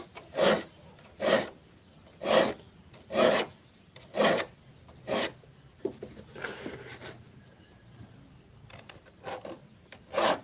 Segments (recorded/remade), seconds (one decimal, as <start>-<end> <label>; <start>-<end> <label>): 0.0-10.4 recorded